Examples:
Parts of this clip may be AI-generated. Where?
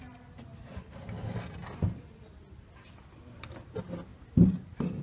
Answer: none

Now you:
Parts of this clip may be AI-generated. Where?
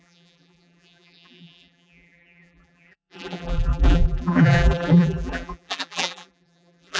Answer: 0.0-7.0 (vocoder, BigVGAN v2)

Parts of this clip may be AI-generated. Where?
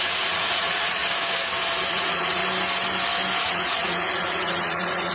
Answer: 0.0-1.0 (vocoder, Vocos); 1.9-2.4; 3.4-5.1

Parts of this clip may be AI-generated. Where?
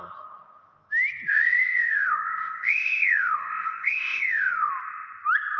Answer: 1.3-4.7 (codec, ZipCodec)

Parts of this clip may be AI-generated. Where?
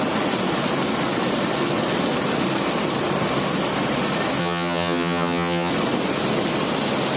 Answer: 4.4-5.7 (vocoder, HiFi-GAN)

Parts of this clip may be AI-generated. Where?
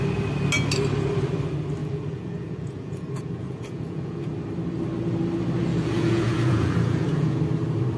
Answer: 1.8-4.3 (vocoder, Vocos); 5.7-7.4